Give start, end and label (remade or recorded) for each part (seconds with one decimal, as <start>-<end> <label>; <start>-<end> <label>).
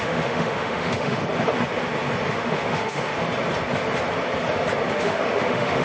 0.0-1.2 remade; 1.2-2.3 recorded; 2.3-3.1 remade; 3.1-4.9 recorded; 4.9-5.8 remade